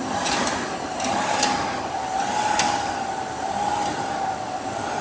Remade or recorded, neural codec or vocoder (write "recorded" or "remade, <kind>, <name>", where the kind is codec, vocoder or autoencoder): recorded